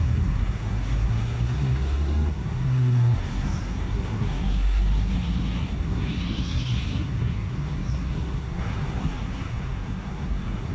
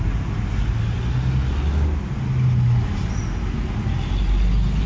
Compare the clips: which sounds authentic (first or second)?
second